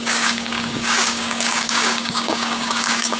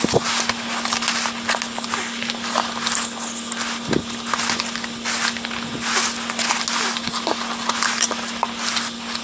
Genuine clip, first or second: second